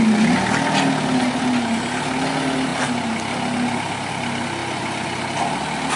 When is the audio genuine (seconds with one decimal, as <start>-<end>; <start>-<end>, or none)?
0.0-4.6; 5.2-6.0